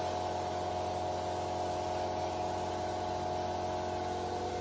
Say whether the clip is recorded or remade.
recorded